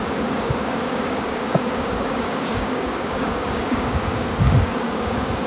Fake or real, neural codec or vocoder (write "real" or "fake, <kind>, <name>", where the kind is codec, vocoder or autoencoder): fake, codec, DAC